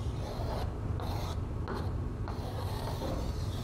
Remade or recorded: recorded